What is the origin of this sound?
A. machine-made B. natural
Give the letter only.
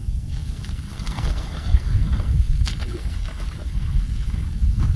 A